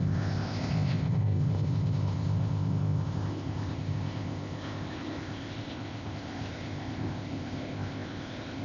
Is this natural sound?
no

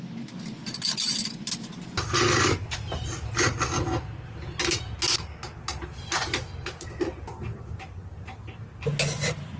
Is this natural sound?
yes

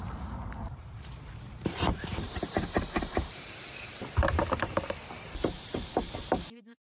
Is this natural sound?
no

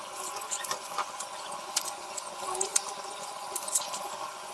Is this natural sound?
no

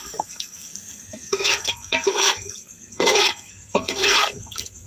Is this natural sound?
no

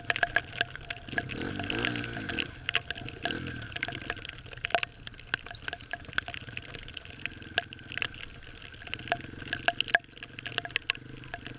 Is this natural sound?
yes